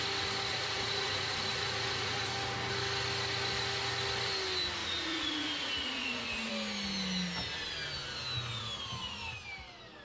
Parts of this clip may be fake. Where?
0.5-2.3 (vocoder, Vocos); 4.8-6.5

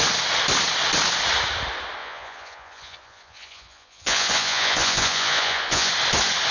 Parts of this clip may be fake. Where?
2.0-5.9 (vocoder, Vocos)

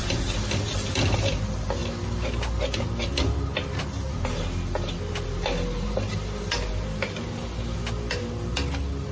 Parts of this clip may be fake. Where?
none

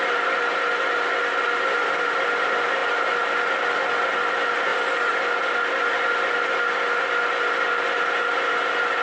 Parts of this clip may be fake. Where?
none

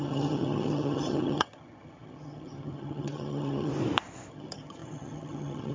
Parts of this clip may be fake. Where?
0.0-3.7 (vocoder, HiFi-GAN); 4.3-5.7